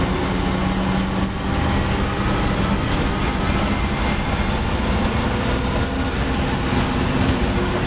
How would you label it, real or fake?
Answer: real